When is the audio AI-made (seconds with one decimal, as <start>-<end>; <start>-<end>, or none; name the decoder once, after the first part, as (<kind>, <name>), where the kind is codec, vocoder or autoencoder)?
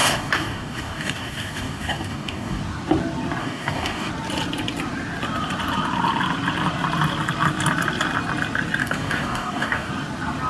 0.0-2.6 (codec, DAC); 3.4-4.1; 8.8-9.9